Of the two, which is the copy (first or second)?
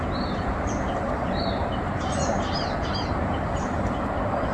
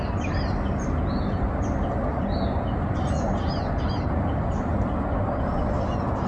first